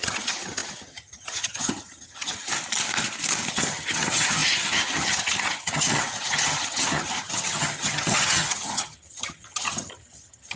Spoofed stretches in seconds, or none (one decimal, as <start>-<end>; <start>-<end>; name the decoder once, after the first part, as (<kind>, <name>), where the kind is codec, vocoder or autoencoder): 0.0-2.5 (vocoder, HiFi-GAN); 3.5-10.6

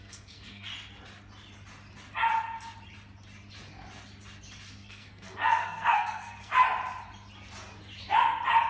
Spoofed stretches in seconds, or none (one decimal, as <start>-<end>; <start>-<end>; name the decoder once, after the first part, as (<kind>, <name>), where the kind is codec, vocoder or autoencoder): 0.0-0.7 (codec, SNAC); 4.7-6.5

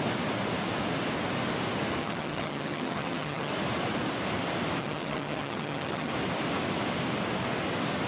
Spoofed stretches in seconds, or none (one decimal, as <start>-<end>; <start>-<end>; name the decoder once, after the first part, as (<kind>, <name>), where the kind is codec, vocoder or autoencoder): 2.0-3.5 (vocoder, HiFi-GAN); 4.8-6.1

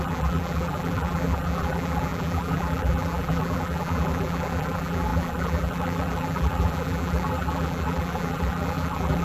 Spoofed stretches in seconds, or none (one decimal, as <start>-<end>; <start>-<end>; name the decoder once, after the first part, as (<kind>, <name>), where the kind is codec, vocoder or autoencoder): 0.0-9.2 (vocoder, BigVGAN v2)